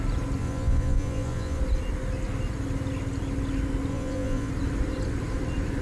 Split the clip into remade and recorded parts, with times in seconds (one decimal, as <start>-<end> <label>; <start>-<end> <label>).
0.0-0.4 recorded; 0.4-1.6 remade; 1.6-3.9 recorded; 3.9-4.5 remade; 4.5-5.8 recorded